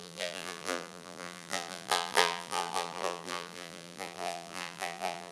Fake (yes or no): yes